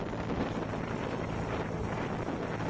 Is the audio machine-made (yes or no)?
no